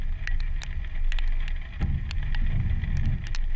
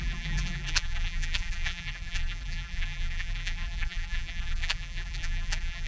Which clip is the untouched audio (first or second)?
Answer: first